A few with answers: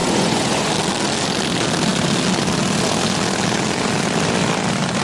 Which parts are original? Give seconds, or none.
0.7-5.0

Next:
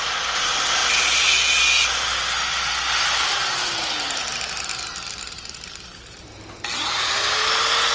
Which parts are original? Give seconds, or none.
0.0-7.9

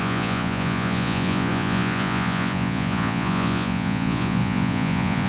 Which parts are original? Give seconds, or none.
none

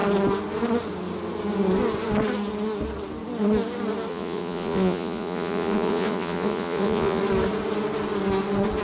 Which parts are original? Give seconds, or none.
0.0-4.1; 7.2-8.8

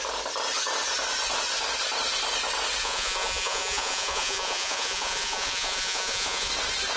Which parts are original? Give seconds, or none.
0.0-2.8; 6.5-7.0

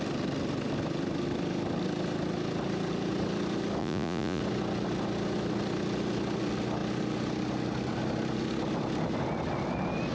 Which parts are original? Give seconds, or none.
0.0-3.8; 4.4-10.1

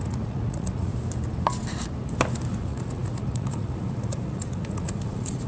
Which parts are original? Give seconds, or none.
0.9-2.5